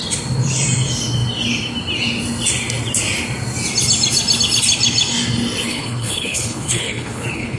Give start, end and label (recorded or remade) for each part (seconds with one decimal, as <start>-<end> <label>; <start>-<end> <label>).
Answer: 0.0-5.7 recorded; 5.7-7.6 remade

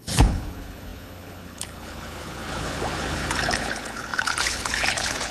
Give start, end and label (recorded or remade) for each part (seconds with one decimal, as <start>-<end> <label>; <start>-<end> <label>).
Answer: 0.0-5.3 remade

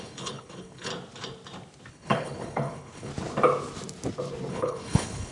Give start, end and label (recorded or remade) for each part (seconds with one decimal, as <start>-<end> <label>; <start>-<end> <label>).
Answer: 0.0-0.9 remade; 0.9-1.9 recorded; 1.9-3.1 remade; 3.1-4.5 recorded; 4.5-5.3 remade

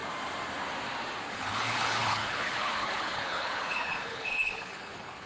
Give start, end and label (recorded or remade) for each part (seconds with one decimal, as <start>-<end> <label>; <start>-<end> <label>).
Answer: 0.0-1.3 recorded; 1.3-5.3 remade

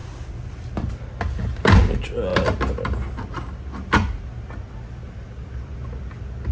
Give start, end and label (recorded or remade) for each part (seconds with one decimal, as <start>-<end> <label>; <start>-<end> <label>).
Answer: 0.0-6.5 recorded

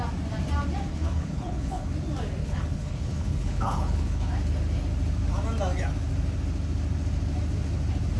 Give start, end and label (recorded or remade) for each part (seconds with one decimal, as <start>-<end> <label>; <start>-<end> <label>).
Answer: 0.0-0.9 recorded; 0.9-1.9 remade; 1.9-2.4 recorded; 2.4-4.3 remade; 4.3-8.2 recorded

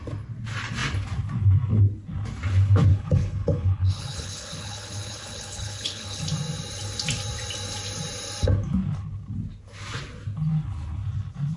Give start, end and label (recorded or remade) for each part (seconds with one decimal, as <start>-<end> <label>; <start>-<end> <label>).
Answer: 0.0-2.9 recorded; 2.9-6.2 remade; 6.2-11.6 recorded